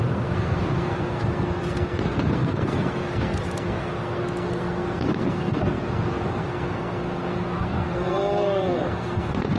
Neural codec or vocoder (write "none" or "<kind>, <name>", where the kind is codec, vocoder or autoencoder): codec, SNAC